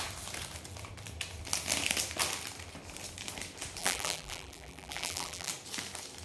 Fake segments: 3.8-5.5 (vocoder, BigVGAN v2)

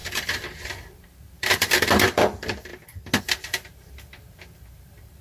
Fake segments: 0.0-2.7 (vocoder, BigVGAN v2); 3.2-5.2